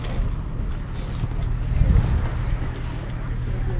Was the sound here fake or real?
real